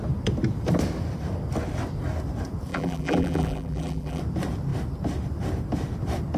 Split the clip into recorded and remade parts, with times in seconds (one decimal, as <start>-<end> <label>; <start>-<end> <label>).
0.0-2.7 recorded; 2.7-4.2 remade; 4.2-6.4 recorded